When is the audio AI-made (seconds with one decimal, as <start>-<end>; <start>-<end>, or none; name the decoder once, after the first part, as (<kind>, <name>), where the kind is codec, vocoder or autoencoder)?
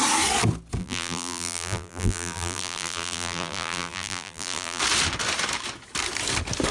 0.8-4.8 (vocoder, BigVGAN v2)